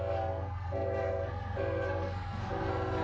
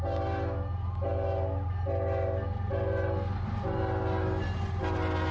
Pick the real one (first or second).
second